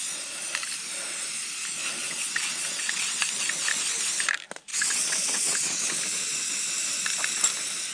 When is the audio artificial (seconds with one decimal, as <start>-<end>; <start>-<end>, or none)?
2.0-3.1; 4.7-6.0